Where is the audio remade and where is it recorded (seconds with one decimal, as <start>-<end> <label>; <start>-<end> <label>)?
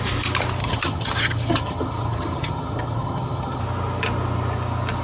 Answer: 0.0-0.6 recorded; 0.6-3.6 remade; 3.6-5.0 recorded